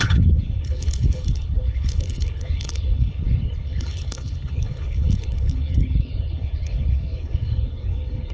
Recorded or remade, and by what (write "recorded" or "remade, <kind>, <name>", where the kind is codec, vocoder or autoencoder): remade, codec, HILCodec